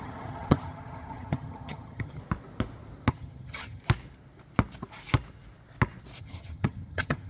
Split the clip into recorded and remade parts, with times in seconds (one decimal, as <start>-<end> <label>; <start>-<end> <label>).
0.0-2.2 remade; 2.2-3.1 recorded; 3.1-3.8 remade; 3.8-6.2 recorded; 6.2-7.3 remade